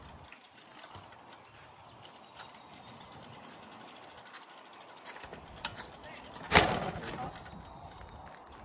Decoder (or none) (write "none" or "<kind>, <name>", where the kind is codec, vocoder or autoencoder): vocoder, BigVGAN v2